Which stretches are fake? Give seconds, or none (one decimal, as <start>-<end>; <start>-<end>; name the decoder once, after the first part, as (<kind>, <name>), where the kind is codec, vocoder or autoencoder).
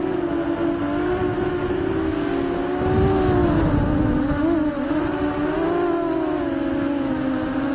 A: none